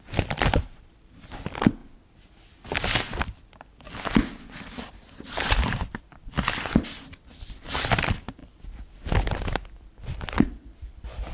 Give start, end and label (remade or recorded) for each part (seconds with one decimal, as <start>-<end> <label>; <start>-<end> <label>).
0.0-1.8 remade; 1.8-5.3 recorded; 5.3-11.3 remade